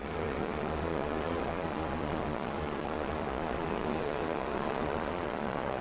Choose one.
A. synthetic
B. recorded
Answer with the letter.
A